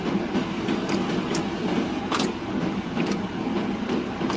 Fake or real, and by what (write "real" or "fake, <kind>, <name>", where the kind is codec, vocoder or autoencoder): real